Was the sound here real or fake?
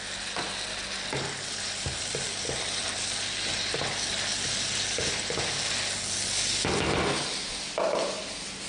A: real